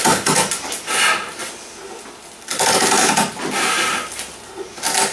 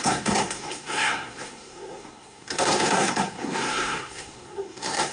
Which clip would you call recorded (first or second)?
first